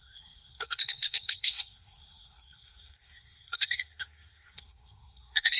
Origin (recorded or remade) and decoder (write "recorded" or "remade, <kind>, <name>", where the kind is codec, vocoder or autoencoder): remade, codec, SNAC